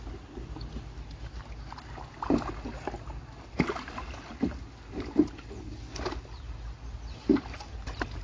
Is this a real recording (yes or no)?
yes